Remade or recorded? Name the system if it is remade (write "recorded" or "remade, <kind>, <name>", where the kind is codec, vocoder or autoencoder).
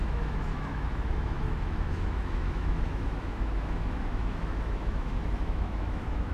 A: remade, autoencoder, DAC-VAE